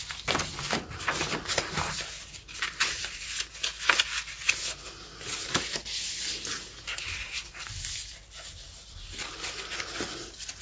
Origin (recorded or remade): recorded